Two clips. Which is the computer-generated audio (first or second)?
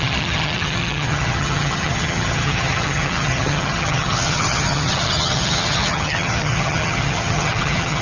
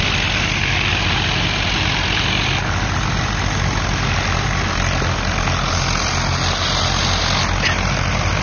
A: first